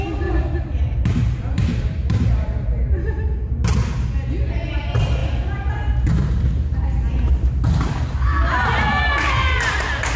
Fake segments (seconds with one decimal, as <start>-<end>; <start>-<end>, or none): 1.2-3.5